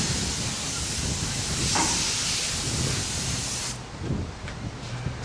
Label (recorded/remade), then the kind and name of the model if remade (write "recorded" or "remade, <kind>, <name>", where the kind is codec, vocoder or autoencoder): recorded